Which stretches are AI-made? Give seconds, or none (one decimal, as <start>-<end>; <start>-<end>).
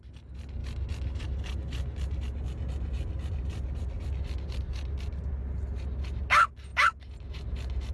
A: none